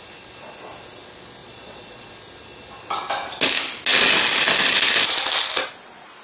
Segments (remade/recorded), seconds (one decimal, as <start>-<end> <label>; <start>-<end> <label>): 0.0-1.4 recorded; 1.4-2.1 remade; 2.1-6.2 recorded